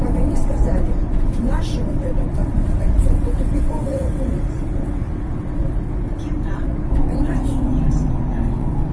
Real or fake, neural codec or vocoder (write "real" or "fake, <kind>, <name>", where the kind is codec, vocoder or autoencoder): fake, vocoder, WaveNeXt